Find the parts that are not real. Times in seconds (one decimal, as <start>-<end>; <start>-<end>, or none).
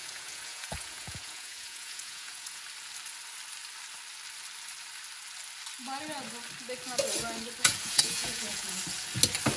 0.0-2.6; 7.6-8.8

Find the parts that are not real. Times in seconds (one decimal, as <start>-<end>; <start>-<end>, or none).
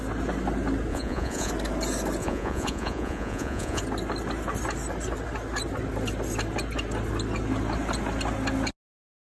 0.9-1.5; 2.2-3.8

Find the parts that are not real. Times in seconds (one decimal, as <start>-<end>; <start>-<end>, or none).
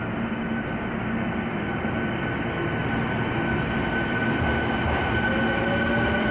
none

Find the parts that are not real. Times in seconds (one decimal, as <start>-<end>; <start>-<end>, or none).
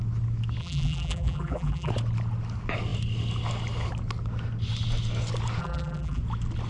0.6-1.9; 5.6-6.2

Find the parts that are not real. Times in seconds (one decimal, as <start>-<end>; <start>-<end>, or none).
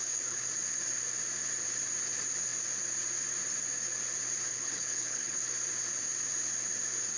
0.0-0.5; 4.5-5.5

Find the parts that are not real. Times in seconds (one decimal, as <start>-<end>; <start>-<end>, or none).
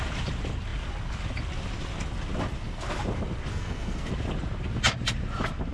3.5-4.1